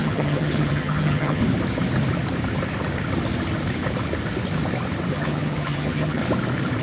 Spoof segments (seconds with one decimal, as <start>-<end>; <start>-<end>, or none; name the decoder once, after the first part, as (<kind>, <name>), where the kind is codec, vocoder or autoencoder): 0.0-1.4 (vocoder, HiFi-GAN); 5.1-6.2